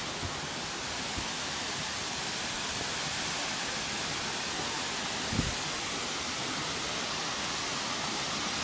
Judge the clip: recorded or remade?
recorded